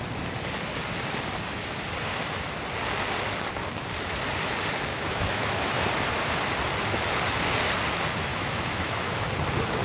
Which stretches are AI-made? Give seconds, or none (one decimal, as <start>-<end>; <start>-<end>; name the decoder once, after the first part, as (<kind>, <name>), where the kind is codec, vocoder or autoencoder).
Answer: 4.9-5.9 (autoencoder, DAC-VAE); 8.3-9.2